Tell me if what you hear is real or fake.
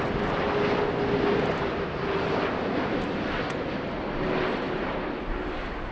real